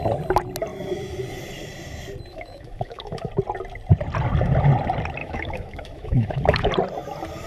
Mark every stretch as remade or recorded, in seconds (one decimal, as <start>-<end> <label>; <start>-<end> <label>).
0.0-2.3 recorded; 2.3-3.3 remade; 3.3-5.2 recorded; 5.2-6.7 remade; 6.7-7.5 recorded